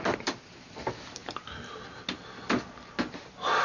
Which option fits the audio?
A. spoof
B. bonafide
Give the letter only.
B